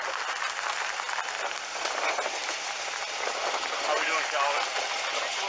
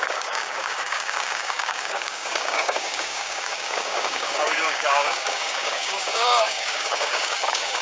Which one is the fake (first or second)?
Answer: second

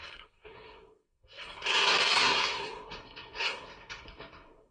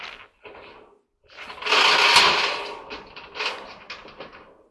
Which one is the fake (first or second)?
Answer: first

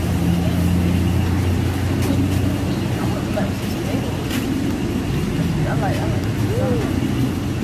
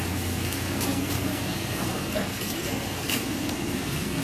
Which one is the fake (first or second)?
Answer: second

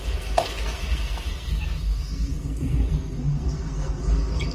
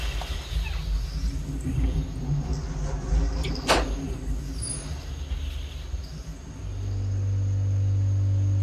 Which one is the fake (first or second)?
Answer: first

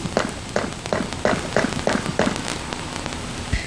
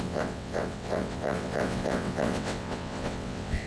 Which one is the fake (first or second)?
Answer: second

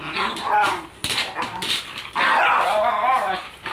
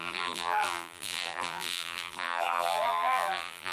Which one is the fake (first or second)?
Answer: second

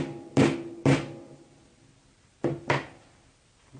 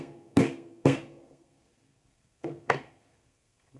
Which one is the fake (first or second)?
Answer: second